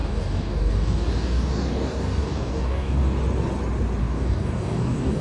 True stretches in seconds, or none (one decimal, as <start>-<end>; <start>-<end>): 3.1-4.0